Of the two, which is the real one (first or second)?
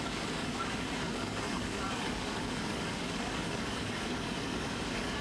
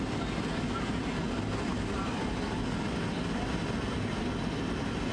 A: second